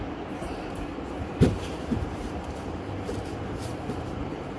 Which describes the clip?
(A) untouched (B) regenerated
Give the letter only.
B